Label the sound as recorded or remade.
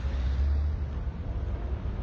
recorded